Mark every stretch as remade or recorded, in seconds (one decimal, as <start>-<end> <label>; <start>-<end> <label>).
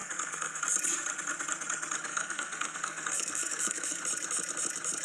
0.0-0.6 remade; 0.6-2.1 recorded; 2.1-4.0 remade; 4.0-5.0 recorded